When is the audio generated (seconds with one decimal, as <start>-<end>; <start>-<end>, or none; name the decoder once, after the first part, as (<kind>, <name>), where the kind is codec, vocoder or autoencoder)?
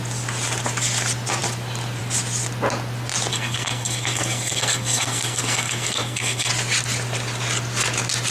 3.3-6.5 (codec, SNAC)